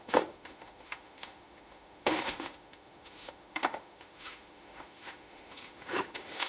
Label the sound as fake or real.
fake